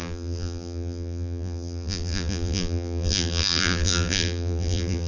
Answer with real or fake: fake